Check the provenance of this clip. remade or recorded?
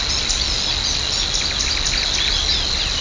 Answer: recorded